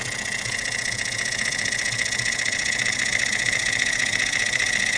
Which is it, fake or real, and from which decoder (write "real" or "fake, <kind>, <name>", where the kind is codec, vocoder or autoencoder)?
fake, vocoder, Vocos